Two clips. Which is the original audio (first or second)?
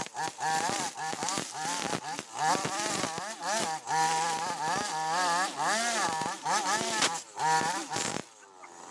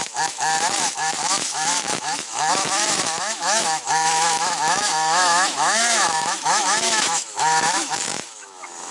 first